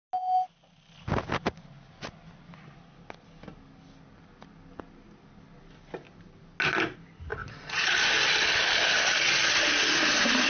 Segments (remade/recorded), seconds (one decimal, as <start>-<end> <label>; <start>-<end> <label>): 0.0-7.3 recorded; 7.3-8.0 remade; 8.0-10.5 recorded